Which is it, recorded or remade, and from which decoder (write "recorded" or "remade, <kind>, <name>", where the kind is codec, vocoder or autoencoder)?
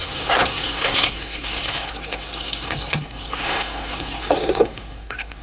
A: remade, codec, SNAC